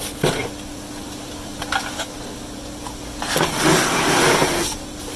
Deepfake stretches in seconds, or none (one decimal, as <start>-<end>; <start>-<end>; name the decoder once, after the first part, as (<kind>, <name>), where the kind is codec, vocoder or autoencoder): 0.4-2.0 (vocoder, BigVGAN v2)